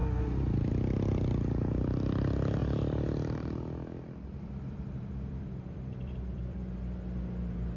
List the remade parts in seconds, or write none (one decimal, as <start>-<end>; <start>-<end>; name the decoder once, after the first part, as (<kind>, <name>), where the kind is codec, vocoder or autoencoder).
2.6-6.8 (vocoder, BigVGAN v2)